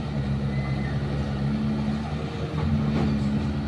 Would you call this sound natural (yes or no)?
yes